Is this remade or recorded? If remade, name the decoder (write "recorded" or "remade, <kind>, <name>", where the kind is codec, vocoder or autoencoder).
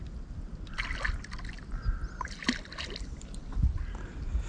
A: recorded